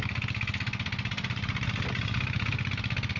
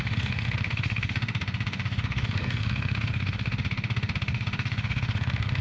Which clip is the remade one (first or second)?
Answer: second